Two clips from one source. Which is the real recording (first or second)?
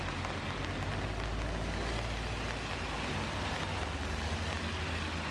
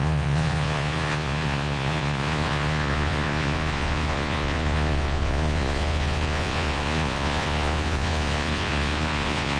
first